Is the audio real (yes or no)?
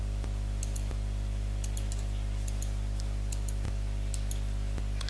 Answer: yes